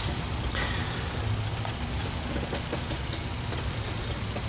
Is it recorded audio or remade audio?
recorded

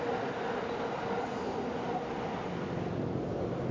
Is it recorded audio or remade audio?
recorded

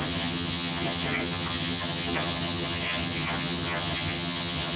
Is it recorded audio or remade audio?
remade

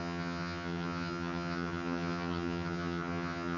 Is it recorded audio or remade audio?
remade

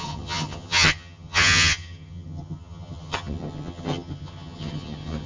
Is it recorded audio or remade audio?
remade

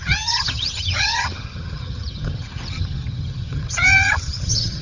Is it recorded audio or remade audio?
remade